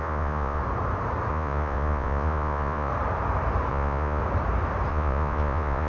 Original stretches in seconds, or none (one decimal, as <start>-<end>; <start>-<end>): 0.6-1.3; 2.9-3.7; 4.2-4.9